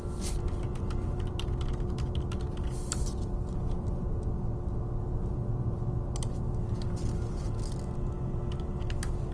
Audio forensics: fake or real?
real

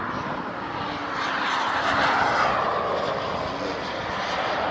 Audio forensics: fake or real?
real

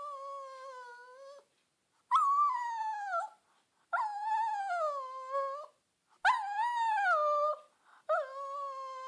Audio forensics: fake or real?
real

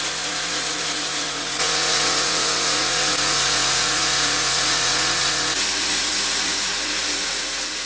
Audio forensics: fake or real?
fake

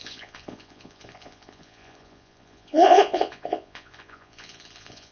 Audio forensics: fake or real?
fake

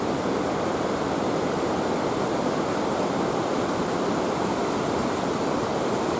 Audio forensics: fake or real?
fake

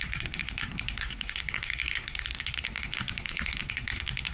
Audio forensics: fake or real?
fake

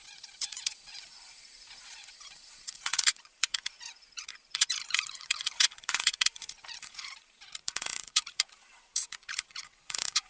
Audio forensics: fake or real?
fake